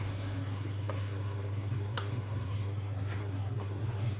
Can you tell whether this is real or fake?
fake